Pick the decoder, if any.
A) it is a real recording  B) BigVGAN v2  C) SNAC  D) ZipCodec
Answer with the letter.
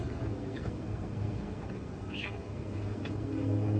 C